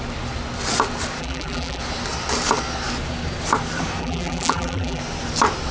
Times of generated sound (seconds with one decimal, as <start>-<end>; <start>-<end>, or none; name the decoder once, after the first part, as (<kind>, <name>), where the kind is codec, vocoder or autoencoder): 1.2-1.8 (vocoder, BigVGAN v2); 4.0-5.0